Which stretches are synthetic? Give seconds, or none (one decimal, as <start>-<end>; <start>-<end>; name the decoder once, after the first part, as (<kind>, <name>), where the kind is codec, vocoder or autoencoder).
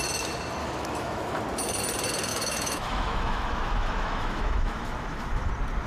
0.6-1.4 (autoencoder, DAC-VAE); 2.3-5.5